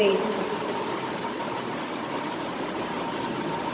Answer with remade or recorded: remade